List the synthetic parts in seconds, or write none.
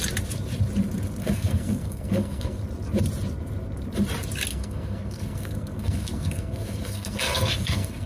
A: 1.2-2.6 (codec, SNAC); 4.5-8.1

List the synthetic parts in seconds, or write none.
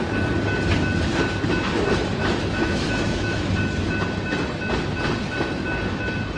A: 2.2-3.5 (autoencoder, DAC-VAE)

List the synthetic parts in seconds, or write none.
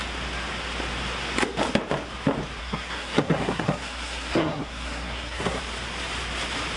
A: 2.6-5.6 (codec, SNAC)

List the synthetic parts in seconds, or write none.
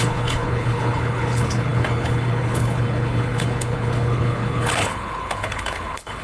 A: 0.0-6.2 (codec, HILCodec)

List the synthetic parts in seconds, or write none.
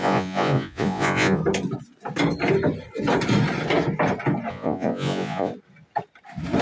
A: 0.0-1.4 (vocoder, Vocos); 4.5-5.5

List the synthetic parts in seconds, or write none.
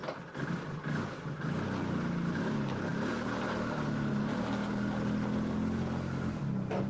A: none